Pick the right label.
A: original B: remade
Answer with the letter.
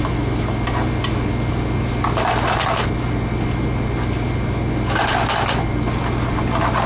A